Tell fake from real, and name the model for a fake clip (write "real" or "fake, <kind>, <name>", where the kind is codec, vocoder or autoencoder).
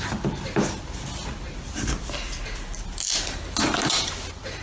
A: real